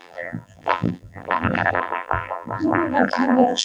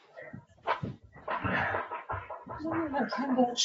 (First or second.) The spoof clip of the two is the first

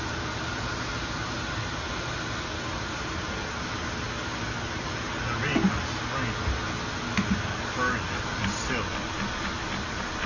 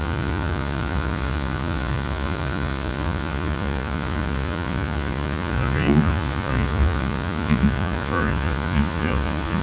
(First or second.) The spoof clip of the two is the second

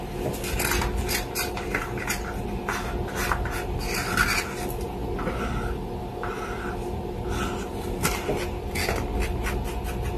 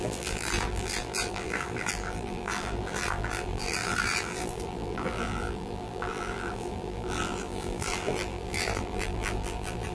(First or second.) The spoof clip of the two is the second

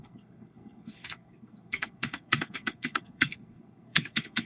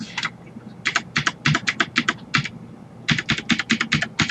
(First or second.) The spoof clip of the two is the first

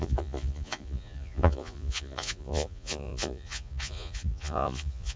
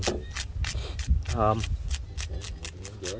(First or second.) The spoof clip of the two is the first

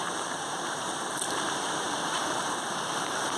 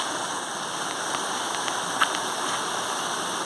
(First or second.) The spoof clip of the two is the first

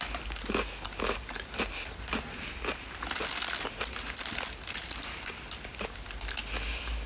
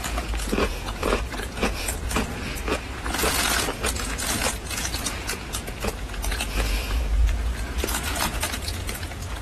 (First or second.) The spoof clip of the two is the second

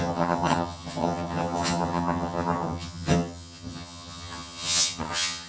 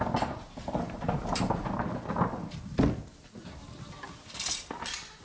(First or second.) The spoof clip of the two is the first